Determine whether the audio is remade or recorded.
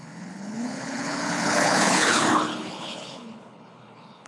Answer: remade